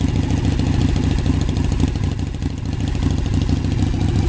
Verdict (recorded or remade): recorded